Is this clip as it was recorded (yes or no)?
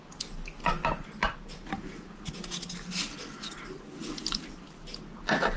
yes